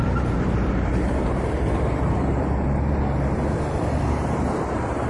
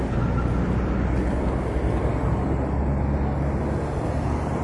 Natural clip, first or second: second